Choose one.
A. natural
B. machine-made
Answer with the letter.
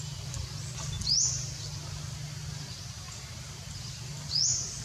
A